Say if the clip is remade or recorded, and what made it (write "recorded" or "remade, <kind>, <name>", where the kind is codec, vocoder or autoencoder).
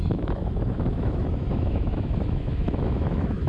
remade, autoencoder, DAC-VAE